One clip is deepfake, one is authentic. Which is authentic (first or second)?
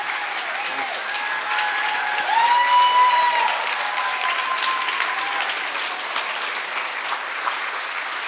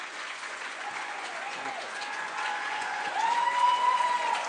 first